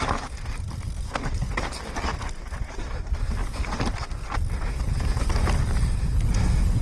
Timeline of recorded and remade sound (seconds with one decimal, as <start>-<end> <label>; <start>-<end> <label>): 0.0-6.8 recorded